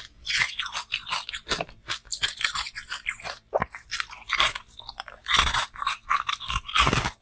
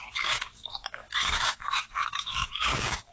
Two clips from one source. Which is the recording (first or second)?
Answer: first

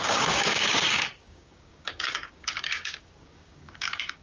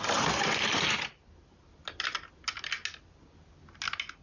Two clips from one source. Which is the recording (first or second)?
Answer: second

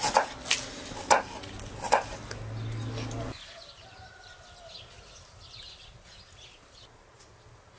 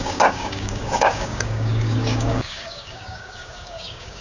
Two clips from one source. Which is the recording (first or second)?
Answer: first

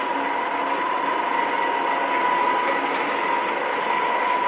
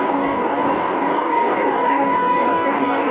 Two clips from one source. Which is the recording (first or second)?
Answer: first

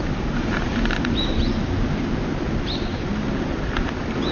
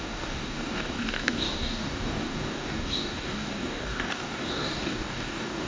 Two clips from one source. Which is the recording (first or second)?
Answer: first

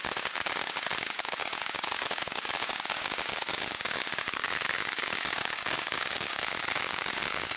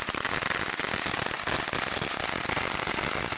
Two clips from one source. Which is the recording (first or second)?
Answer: second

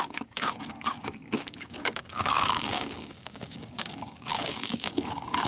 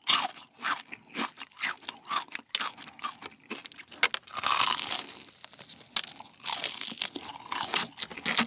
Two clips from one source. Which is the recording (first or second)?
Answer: second